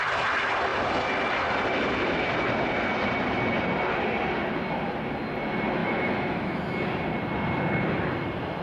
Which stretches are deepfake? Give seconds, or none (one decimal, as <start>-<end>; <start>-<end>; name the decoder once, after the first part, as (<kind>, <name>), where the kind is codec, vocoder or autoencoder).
5.8-6.6 (autoencoder, DAC-VAE)